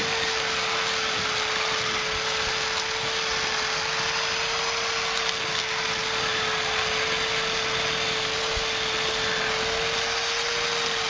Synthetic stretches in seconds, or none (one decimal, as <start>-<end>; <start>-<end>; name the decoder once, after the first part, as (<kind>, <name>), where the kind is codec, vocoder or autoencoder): none